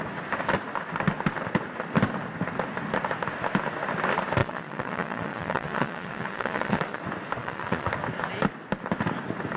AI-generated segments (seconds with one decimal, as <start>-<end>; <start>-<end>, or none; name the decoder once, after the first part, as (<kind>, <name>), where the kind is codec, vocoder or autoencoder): 4.4-7.0 (vocoder, Vocos); 7.4-7.9